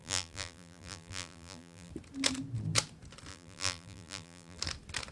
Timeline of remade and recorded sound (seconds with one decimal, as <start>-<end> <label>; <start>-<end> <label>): 0.0-1.9 remade; 1.9-3.3 recorded; 3.3-4.6 remade; 4.6-5.1 recorded

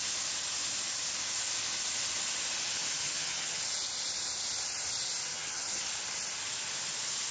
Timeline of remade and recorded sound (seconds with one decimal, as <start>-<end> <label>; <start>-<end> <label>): 0.0-3.0 recorded; 3.0-3.6 remade; 3.6-5.3 recorded; 5.3-5.8 remade; 5.8-7.3 recorded